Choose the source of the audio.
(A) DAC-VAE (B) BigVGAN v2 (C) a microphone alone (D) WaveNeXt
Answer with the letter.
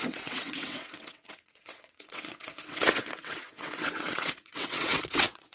D